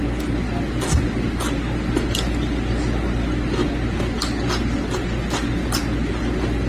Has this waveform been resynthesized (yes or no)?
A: no